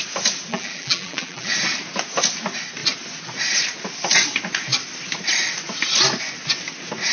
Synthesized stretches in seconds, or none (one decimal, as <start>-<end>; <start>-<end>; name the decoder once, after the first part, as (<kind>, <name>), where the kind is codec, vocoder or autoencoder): 0.5-1.5 (vocoder, BigVGAN v2)

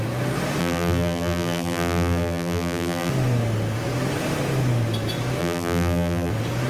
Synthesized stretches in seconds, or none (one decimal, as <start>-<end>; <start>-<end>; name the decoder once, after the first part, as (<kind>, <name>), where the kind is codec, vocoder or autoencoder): 0.6-3.1 (vocoder, BigVGAN v2); 5.4-6.3